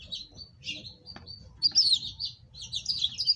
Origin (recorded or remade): recorded